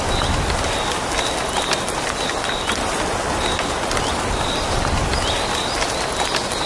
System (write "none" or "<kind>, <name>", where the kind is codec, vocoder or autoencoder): none